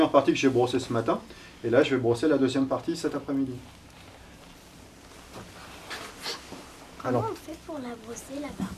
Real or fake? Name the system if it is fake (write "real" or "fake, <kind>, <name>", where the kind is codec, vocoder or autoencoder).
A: real